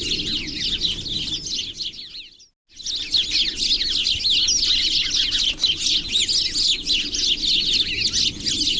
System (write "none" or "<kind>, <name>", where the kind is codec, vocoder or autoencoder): none